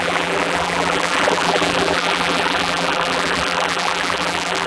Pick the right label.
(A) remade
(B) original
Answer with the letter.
A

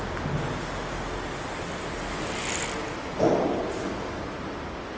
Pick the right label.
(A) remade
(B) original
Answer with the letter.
B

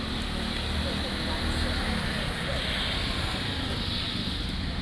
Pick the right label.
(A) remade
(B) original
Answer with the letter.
B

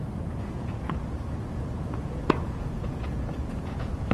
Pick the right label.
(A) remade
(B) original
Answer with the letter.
A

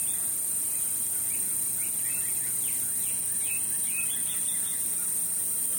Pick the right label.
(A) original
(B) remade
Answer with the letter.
B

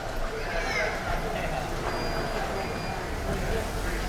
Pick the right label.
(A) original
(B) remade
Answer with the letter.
A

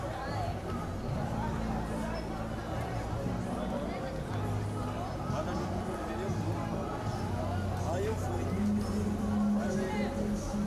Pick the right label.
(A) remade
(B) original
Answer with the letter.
B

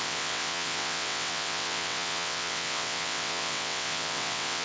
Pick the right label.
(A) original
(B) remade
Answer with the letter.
B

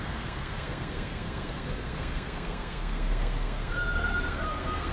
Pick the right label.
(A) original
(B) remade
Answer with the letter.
B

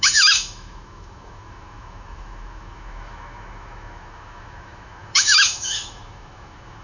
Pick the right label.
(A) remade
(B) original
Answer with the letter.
A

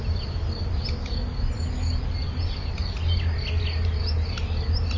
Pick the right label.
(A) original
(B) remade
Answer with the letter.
A